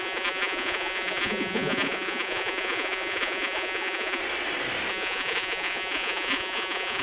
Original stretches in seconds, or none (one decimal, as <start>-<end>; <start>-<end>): 4.2-4.9